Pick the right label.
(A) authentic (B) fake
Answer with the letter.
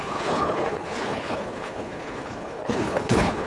B